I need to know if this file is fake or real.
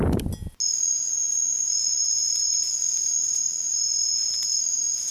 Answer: real